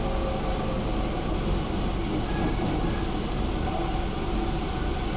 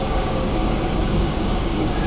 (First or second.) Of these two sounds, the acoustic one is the first